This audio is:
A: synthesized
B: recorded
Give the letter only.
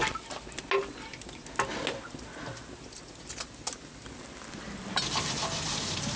B